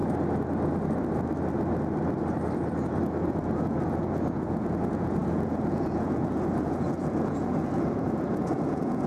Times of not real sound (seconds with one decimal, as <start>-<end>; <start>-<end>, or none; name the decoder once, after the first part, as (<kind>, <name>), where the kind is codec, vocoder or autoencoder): 3.3-9.1 (vocoder, Vocos)